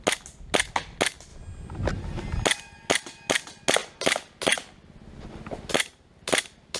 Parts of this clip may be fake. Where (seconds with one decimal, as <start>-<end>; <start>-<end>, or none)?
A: none